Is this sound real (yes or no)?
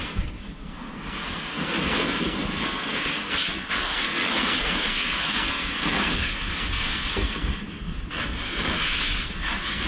no